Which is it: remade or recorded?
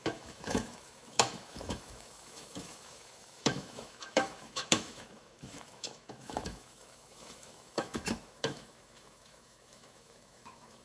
remade